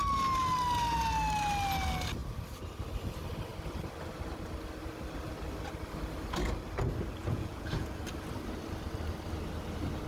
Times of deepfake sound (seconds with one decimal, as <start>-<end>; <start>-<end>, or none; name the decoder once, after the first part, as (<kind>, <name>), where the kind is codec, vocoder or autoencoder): 7.2-8.0 (vocoder, Vocos)